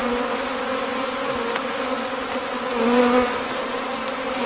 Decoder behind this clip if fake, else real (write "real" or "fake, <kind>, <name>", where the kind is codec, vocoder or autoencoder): real